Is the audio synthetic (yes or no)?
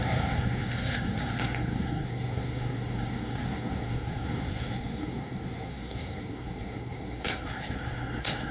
yes